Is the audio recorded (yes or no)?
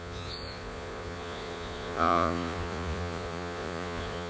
no